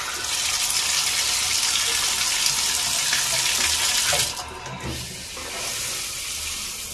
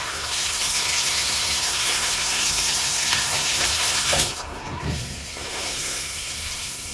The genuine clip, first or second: first